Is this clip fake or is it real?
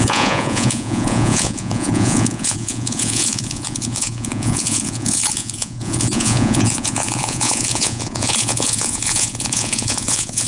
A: fake